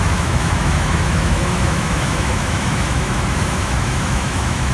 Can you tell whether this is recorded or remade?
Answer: remade